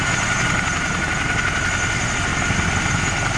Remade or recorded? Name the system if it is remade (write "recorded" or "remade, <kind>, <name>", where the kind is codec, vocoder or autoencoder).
recorded